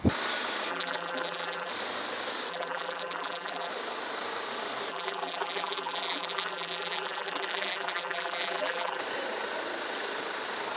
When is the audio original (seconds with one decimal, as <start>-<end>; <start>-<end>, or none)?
0.0-0.7; 1.7-2.5; 3.7-4.9; 9.0-10.8